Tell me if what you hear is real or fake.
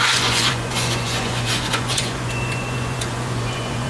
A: fake